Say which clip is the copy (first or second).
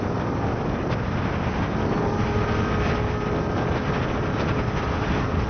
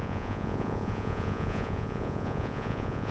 second